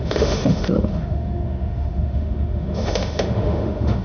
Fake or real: fake